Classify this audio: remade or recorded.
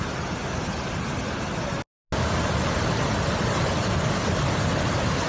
recorded